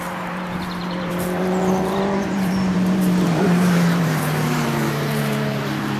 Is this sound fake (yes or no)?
yes